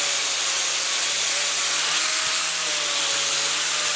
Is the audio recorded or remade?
recorded